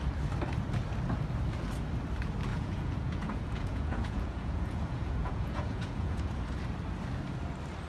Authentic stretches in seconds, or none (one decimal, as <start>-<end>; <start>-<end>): 0.0-2.5; 6.3-7.9